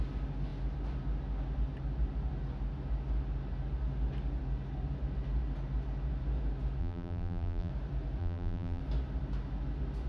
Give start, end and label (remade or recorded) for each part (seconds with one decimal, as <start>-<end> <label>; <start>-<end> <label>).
0.0-6.8 recorded; 6.8-7.7 remade; 7.7-8.2 recorded; 8.2-8.8 remade; 8.8-10.1 recorded